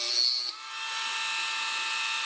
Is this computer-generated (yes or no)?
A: no